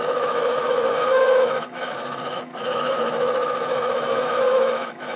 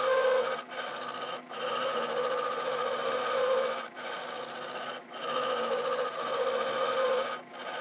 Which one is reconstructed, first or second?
first